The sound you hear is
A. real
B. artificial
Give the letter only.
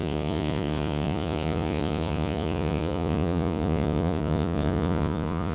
B